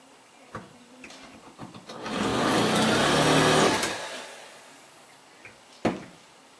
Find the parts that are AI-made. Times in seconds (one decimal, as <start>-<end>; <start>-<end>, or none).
none